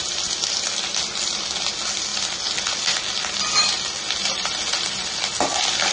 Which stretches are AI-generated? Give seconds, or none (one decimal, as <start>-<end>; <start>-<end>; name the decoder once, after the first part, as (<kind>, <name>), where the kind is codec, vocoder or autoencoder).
none